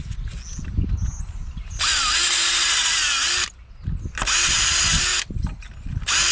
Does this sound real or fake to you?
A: real